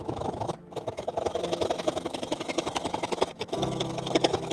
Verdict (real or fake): fake